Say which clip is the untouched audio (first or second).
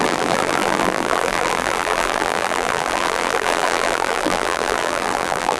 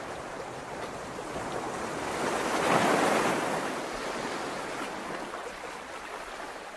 second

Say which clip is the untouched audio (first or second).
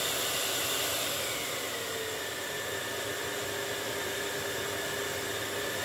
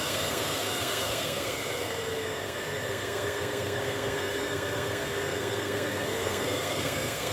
first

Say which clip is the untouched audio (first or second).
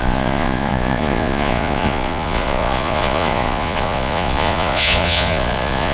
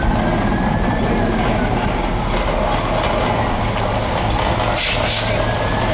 second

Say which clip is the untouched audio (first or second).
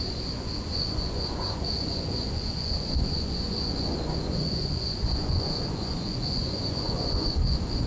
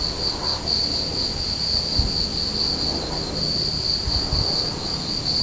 second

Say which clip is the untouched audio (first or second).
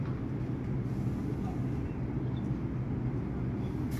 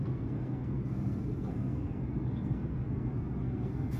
first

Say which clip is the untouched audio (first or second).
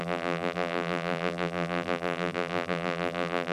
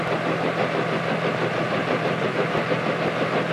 second